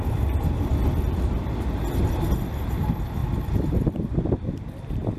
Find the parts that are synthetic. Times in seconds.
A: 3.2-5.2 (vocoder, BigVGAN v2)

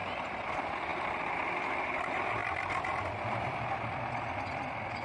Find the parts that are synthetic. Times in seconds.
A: 0.0-0.5 (vocoder, BigVGAN v2)